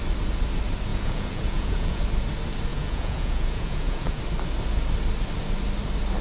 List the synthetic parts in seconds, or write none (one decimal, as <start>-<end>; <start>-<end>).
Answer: 0.9-2.0; 2.7-4.2